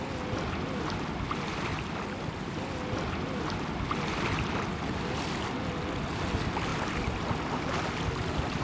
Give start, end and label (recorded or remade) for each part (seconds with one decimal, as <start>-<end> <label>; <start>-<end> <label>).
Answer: 0.0-8.6 recorded